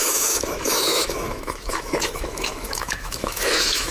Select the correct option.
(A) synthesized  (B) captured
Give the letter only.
A